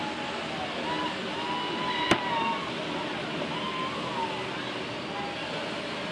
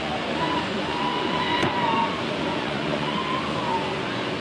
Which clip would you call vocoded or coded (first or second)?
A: second